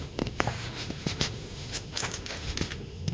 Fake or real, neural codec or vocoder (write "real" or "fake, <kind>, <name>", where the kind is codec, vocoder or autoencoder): fake, autoencoder, DAC-VAE